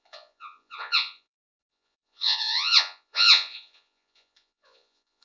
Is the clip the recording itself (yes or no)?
no